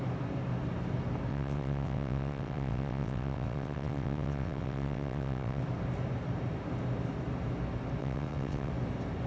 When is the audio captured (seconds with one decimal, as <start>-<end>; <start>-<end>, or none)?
0.0-1.3; 5.6-8.0; 8.7-9.3